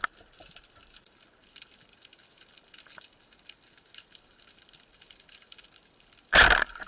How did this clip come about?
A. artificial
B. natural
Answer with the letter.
B